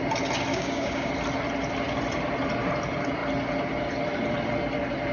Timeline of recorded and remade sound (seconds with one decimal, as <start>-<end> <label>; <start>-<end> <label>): 0.0-0.5 recorded; 0.5-1.1 remade; 1.1-5.1 recorded